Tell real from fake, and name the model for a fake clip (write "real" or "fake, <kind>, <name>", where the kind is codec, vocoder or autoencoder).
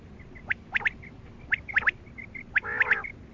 real